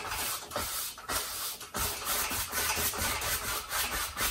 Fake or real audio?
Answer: real